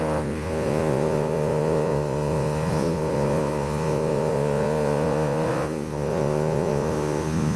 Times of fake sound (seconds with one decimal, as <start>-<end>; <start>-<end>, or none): 0.0-7.6